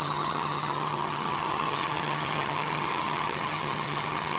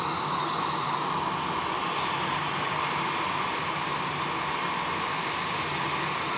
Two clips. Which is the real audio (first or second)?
second